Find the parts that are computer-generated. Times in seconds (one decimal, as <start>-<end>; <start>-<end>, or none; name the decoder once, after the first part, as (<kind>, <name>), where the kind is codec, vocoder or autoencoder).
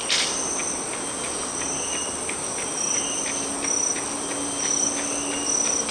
0.0-0.6 (vocoder, BigVGAN v2); 4.1-5.9